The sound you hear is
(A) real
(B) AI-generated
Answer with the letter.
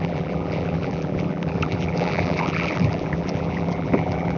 B